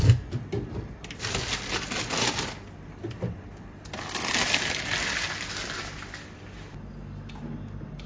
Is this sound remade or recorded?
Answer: recorded